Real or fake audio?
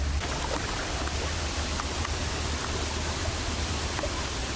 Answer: real